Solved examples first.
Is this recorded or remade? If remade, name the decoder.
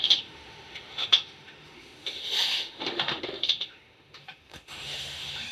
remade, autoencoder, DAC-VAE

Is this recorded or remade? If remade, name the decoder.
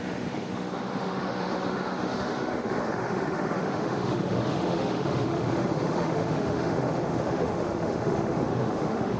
remade, autoencoder, DAC-VAE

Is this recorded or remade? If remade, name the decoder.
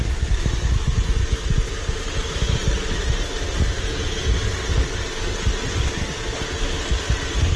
recorded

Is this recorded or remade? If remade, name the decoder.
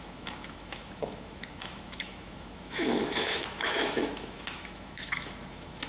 remade, autoencoder, DAC-VAE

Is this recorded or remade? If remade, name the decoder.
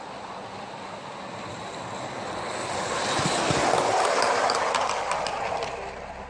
recorded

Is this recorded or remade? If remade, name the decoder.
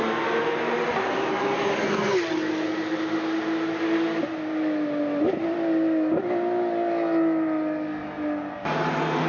recorded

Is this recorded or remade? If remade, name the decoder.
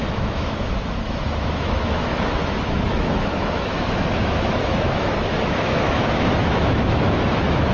remade, autoencoder, DAC-VAE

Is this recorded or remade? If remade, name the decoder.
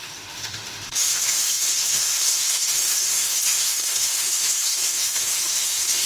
remade, autoencoder, DAC-VAE